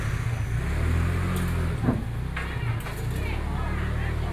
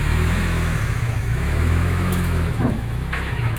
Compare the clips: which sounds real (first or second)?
first